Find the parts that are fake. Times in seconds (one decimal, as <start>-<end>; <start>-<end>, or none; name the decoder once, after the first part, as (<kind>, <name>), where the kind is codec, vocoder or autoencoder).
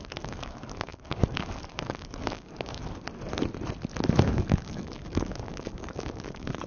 0.0-2.8 (codec, DAC); 4.2-6.7